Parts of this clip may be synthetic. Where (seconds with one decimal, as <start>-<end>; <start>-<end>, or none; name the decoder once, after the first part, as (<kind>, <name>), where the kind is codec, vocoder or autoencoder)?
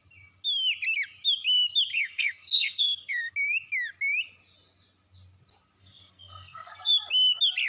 1.9-3.3 (codec, SNAC); 5.8-6.9